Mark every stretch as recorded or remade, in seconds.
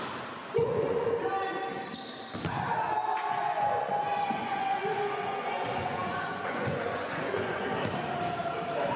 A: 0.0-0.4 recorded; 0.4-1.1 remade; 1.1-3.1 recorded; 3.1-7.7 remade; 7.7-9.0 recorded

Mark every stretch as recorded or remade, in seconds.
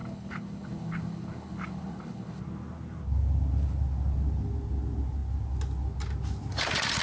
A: 0.0-2.4 remade; 2.4-7.0 recorded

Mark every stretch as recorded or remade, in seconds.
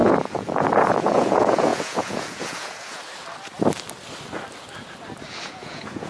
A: 0.0-3.0 remade; 3.0-5.3 recorded; 5.3-6.1 remade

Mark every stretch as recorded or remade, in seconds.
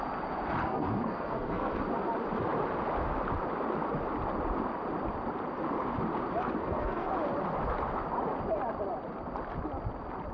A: 0.0-0.6 recorded; 0.6-1.7 remade; 1.7-6.6 recorded; 6.6-7.1 remade; 7.1-10.3 recorded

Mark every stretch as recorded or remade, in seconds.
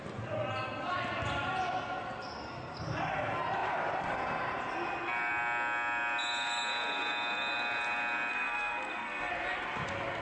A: 0.0-8.3 recorded; 8.3-9.3 remade; 9.3-10.2 recorded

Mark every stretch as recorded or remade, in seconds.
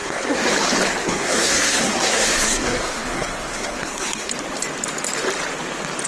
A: 0.0-0.5 remade; 0.5-1.0 recorded; 1.0-4.3 remade; 4.3-6.1 recorded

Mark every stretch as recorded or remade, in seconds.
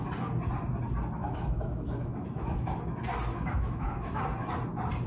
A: 0.0-1.2 recorded; 1.2-2.7 remade; 2.7-3.3 recorded; 3.3-4.2 remade; 4.2-5.1 recorded